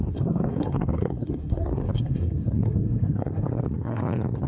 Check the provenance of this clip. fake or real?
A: fake